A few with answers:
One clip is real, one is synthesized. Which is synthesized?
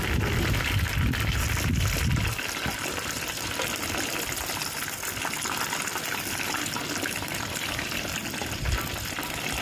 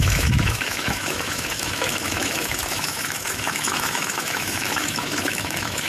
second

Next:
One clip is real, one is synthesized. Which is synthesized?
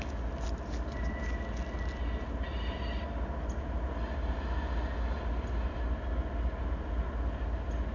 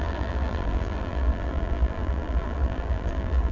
second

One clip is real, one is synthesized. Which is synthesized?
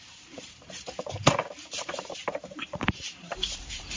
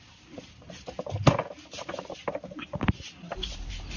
first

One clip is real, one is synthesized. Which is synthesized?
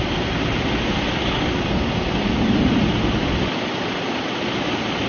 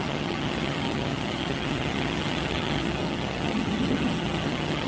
second